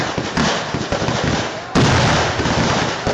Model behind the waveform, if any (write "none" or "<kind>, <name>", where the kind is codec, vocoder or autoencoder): none